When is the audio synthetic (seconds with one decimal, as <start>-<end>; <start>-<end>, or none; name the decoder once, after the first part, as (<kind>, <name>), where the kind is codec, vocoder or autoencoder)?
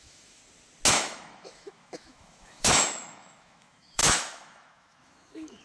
0.0-0.4 (autoencoder, DAC-VAE); 0.9-5.6